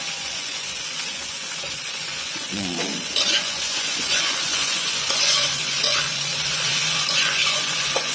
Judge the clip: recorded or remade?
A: remade